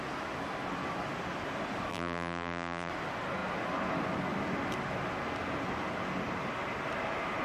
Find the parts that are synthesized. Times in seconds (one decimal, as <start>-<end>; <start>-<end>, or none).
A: 1.9-2.9